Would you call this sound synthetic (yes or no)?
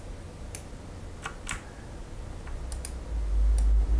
no